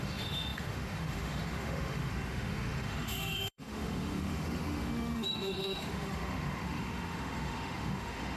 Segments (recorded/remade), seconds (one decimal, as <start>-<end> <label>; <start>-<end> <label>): 0.0-8.4 remade